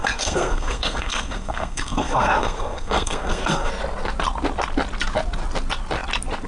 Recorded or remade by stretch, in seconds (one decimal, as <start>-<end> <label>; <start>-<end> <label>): 0.0-3.7 remade; 3.7-6.5 recorded